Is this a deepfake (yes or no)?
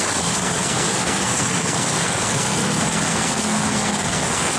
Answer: yes